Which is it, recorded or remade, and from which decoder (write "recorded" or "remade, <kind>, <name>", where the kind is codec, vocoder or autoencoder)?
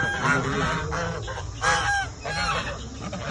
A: recorded